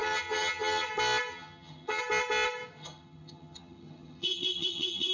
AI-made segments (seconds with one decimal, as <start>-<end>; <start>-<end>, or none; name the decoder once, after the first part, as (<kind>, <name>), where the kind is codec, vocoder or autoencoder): 0.0-0.9 (vocoder, HiFi-GAN); 1.3-2.0; 2.8-5.1